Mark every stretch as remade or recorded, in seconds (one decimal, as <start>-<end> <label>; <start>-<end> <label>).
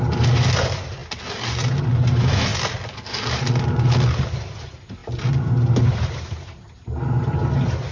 0.0-7.9 recorded